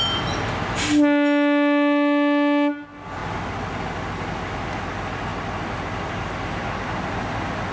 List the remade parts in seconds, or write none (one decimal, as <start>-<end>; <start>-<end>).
none

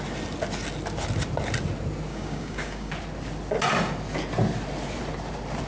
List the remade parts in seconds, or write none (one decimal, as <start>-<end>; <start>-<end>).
2.1-2.9